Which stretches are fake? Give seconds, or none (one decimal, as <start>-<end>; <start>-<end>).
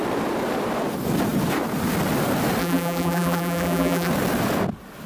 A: 2.6-4.1